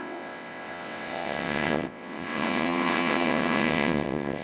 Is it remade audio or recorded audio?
remade